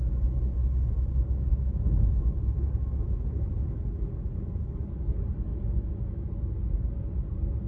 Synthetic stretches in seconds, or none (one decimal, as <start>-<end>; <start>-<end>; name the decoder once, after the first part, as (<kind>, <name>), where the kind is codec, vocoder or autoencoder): 0.6-3.5 (autoencoder, DAC-VAE); 5.5-6.0